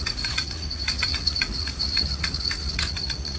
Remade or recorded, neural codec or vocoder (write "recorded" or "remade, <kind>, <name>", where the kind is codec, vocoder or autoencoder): remade, vocoder, Vocos